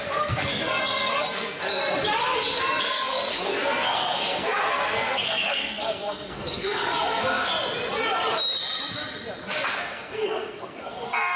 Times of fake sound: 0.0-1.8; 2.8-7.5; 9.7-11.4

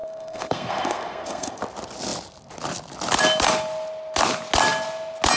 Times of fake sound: 0.0-1.6